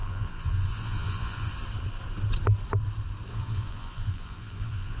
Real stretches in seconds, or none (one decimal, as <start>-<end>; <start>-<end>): 1.5-3.3